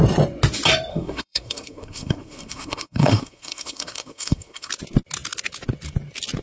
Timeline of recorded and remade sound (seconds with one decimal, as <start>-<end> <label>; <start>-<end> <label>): 0.0-0.9 recorded; 0.9-4.7 remade; 4.7-6.4 recorded